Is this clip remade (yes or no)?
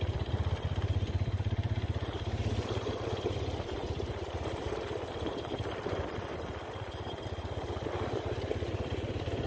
yes